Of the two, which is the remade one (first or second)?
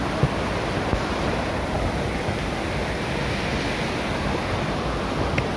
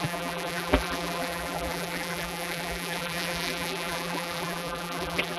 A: second